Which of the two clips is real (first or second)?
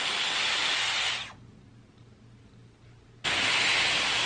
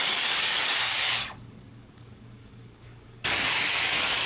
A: first